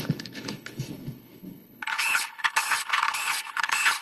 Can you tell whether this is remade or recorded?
remade